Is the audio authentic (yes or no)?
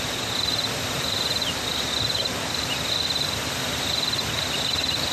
yes